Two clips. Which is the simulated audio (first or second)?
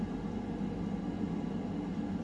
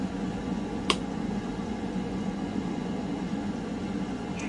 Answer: second